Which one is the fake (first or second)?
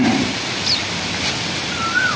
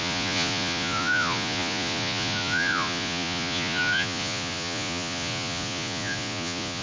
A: second